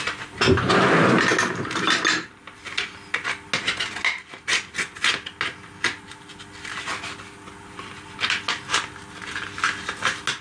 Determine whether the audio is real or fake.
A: real